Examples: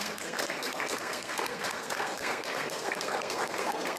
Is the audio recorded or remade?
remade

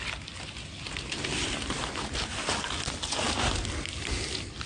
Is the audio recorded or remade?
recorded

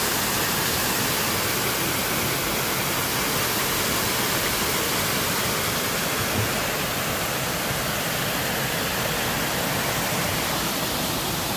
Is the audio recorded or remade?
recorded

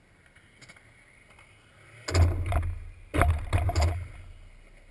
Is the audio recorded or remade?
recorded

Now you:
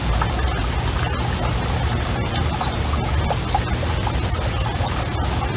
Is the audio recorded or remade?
recorded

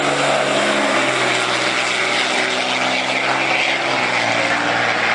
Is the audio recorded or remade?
recorded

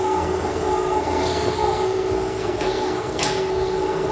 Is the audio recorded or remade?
remade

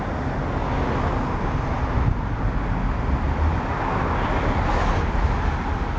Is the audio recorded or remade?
recorded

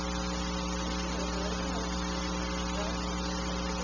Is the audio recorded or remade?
recorded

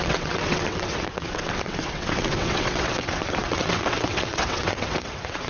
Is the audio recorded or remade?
remade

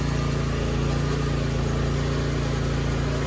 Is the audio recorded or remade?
recorded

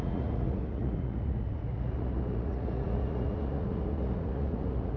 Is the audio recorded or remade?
remade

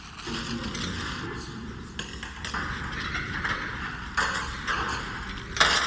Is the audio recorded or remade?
recorded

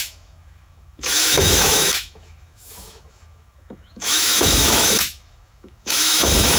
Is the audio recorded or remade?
remade